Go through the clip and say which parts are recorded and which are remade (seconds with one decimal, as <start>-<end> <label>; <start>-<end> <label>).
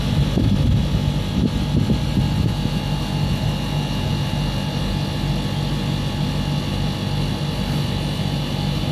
0.0-8.9 recorded